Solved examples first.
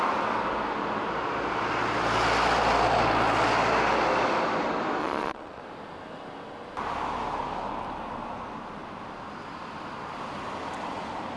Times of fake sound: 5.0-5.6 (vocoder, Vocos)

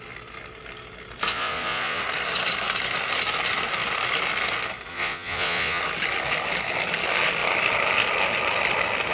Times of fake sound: 1.3-2.0 (vocoder, Vocos); 4.9-5.8

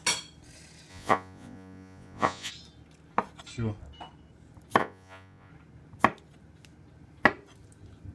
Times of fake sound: 0.9-2.5 (vocoder, Vocos); 4.8-5.5

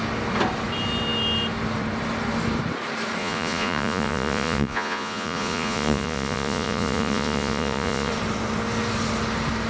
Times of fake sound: 3.2-8.1 (vocoder, Vocos)

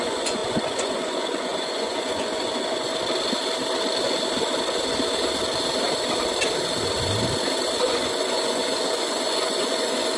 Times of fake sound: 0.0-2.9 (vocoder, Vocos); 7.8-10.2

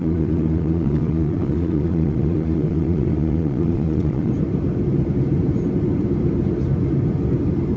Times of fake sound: 0.0-4.3 (vocoder, Vocos)

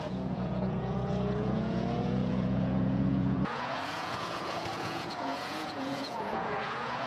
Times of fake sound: 0.0-7.1 (vocoder, Vocos)

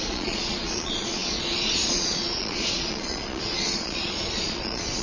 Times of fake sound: 0.0-5.0 (vocoder, Vocos)